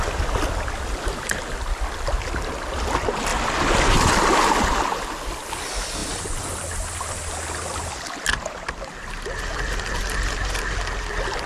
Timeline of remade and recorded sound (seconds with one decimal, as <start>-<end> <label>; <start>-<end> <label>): 0.0-11.5 recorded